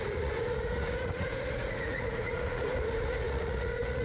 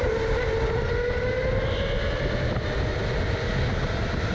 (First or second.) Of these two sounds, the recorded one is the second